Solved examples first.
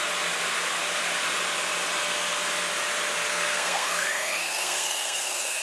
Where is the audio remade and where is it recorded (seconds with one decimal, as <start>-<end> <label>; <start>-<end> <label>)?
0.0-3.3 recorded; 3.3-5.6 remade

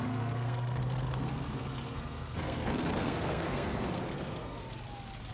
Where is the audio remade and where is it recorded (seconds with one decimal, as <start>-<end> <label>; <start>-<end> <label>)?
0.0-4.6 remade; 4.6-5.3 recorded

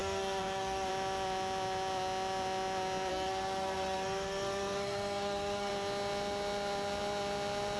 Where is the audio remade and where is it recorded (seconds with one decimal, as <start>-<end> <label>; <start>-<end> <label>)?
0.0-0.9 remade; 0.9-3.1 recorded; 3.1-5.7 remade; 5.7-7.8 recorded